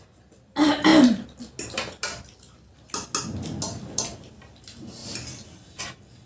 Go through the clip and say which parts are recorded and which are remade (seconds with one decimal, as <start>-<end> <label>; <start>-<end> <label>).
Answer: 0.0-5.0 recorded; 5.0-5.8 remade; 5.8-6.2 recorded